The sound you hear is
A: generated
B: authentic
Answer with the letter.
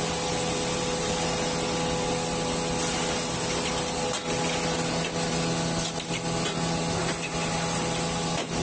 B